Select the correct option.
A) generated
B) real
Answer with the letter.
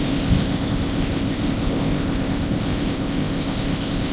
A